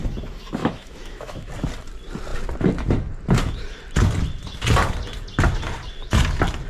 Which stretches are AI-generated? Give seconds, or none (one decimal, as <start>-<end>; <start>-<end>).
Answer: 0.6-1.5